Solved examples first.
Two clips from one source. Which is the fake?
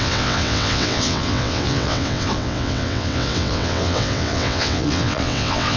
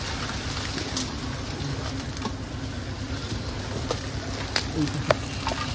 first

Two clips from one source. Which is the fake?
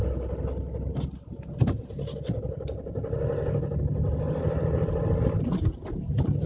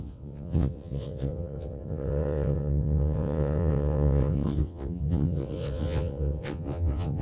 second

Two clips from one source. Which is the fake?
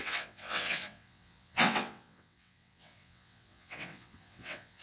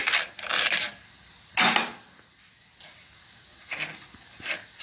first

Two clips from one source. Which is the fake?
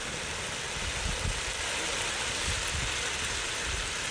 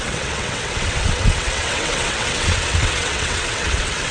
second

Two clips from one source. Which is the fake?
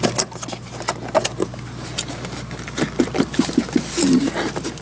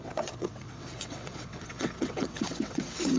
second